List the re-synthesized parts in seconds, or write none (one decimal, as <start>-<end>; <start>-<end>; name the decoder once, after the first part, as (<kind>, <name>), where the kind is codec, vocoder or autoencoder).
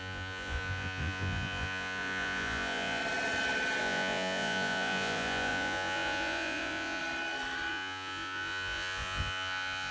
0.0-3.0 (vocoder, Vocos); 3.8-7.0; 7.7-9.9